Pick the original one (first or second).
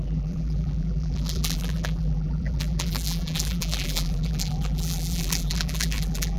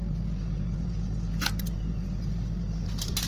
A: second